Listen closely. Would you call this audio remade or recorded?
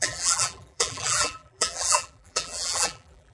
remade